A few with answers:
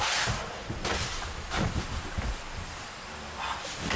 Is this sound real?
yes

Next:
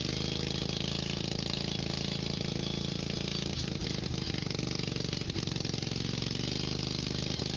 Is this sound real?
yes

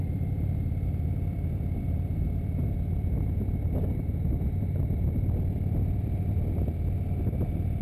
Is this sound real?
no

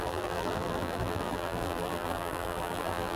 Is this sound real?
no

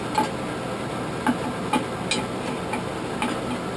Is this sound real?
yes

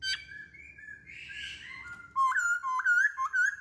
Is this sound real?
yes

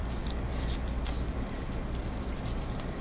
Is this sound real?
no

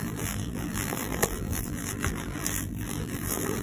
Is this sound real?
no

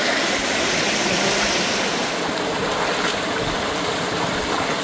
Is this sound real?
yes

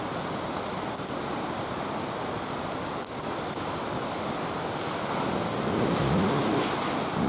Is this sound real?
yes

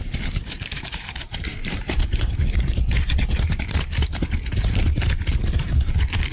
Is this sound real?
no